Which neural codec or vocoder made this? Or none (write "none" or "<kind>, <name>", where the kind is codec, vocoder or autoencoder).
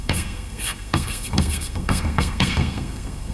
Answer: codec, SNAC